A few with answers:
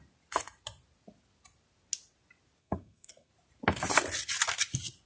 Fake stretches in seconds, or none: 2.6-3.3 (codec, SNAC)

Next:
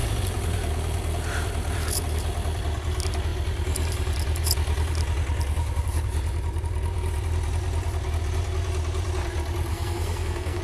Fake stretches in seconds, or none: 9.7-10.6 (codec, SNAC)

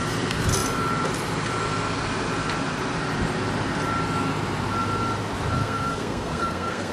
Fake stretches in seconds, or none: 5.6-6.9 (codec, SNAC)

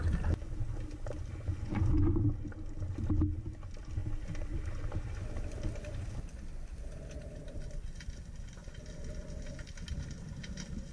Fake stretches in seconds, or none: 1.3-2.3 (vocoder, Vocos)